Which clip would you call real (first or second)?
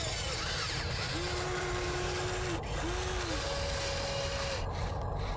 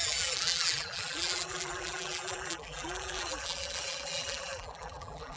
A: first